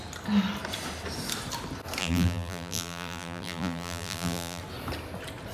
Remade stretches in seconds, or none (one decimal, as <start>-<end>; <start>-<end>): 2.0-4.6

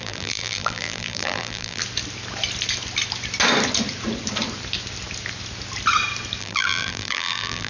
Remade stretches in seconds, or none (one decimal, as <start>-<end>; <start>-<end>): 0.0-1.8; 6.4-7.7